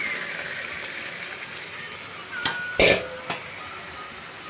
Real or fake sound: real